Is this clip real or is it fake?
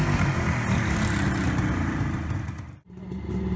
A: real